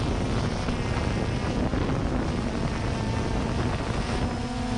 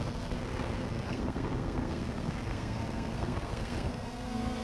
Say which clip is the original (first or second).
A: first